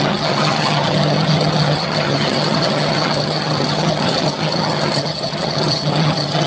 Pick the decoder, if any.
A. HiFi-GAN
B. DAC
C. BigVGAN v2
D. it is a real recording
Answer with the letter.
A